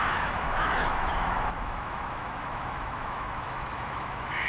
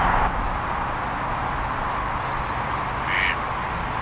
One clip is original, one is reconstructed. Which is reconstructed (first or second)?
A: first